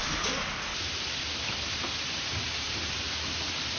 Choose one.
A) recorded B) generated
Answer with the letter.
A